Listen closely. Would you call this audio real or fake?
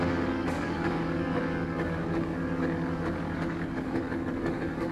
fake